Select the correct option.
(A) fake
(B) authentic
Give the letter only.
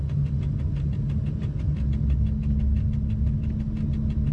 B